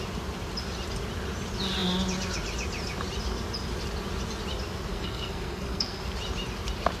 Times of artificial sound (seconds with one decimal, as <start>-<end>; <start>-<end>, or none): 4.9-6.0